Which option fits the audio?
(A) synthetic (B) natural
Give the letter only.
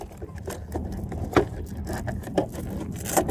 B